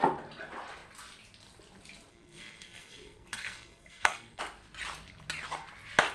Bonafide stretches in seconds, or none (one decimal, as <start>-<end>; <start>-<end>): 0.0-2.1; 4.4-6.1